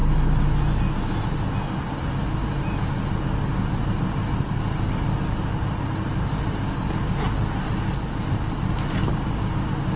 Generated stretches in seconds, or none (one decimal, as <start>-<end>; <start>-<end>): 9.0-9.6